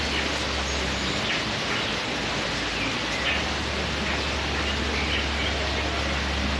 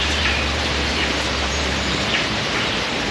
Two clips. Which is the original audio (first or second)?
first